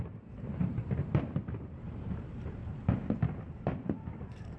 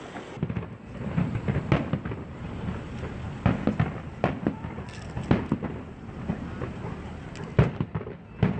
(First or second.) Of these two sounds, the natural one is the second